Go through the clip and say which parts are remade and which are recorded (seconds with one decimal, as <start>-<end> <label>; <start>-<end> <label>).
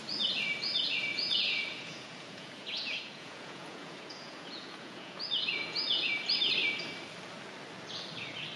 0.0-1.1 recorded; 1.1-6.1 remade; 6.1-8.6 recorded